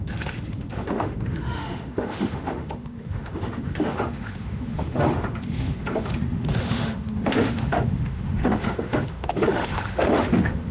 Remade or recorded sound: remade